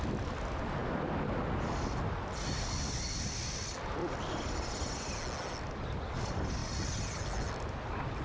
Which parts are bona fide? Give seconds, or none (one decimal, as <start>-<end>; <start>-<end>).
0.0-4.0; 5.2-6.6; 7.5-8.2